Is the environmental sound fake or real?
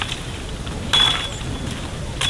real